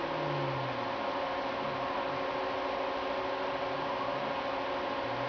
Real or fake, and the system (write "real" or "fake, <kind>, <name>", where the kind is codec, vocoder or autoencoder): real